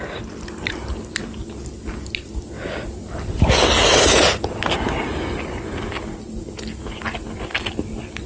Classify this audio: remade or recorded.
recorded